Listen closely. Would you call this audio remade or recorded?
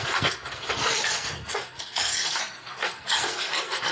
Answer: remade